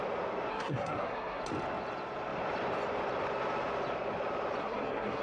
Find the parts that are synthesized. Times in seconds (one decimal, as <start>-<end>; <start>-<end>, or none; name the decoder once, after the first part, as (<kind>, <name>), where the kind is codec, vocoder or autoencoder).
0.5-1.4 (codec, SNAC); 4.6-5.2